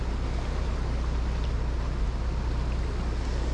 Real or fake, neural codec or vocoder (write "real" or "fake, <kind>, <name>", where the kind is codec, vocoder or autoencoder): real